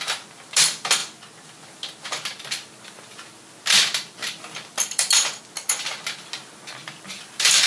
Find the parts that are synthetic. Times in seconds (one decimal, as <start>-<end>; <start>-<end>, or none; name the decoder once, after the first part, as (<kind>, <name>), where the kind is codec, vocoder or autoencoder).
4.2-5.4 (vocoder, BigVGAN v2); 6.8-7.7